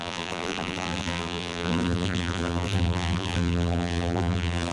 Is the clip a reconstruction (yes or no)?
yes